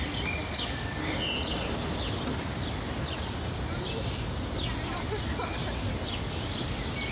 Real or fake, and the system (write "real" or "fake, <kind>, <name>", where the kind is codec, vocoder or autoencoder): real